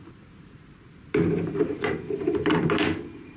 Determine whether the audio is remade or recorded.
remade